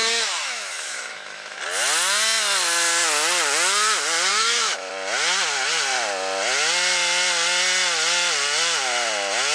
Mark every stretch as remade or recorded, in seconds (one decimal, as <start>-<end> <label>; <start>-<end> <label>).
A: 0.0-1.6 remade; 1.6-4.3 recorded; 4.3-4.9 remade; 4.9-9.5 recorded